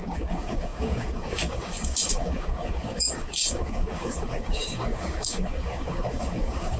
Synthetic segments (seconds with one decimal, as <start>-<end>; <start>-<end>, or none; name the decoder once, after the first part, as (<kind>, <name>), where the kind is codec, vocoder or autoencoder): 0.0-6.8 (codec, DAC)